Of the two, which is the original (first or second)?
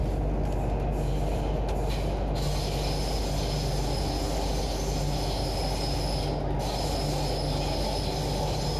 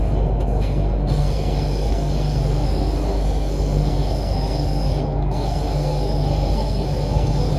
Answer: first